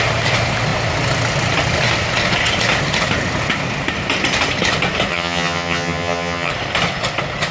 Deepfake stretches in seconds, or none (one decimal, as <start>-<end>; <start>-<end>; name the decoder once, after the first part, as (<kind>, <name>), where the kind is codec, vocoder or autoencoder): 5.1-6.5 (vocoder, HiFi-GAN)